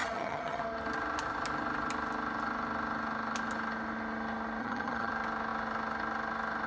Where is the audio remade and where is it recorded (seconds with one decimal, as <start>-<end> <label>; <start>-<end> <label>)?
0.0-0.6 remade; 0.6-4.6 recorded; 4.6-5.1 remade; 5.1-6.7 recorded